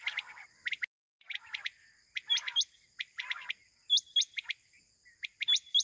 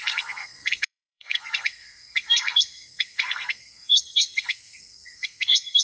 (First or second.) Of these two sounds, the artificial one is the second